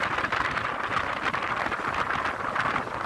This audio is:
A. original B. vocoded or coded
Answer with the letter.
A